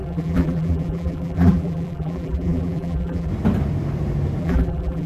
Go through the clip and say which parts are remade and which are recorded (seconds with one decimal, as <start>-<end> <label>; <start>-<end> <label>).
0.0-3.3 remade; 3.3-4.4 recorded; 4.4-5.1 remade